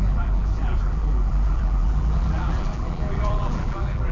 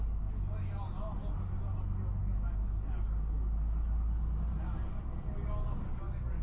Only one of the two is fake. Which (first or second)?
first